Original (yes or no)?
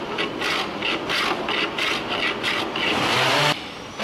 yes